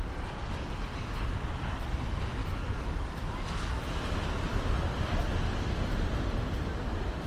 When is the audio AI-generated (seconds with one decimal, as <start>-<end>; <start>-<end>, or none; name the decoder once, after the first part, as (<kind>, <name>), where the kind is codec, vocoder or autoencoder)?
none